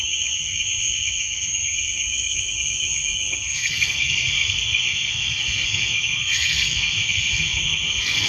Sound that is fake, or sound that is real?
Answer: fake